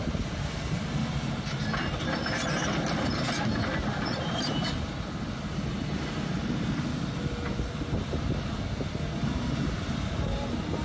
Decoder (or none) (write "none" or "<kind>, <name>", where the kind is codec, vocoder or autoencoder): none